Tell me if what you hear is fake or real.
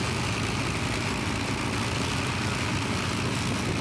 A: real